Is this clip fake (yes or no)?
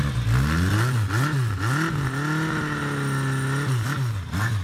no